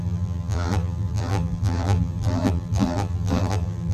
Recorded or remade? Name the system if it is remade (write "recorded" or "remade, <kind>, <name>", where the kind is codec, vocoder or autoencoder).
remade, vocoder, BigVGAN v2